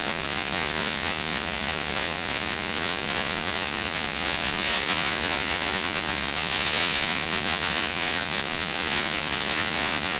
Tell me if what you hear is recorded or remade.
remade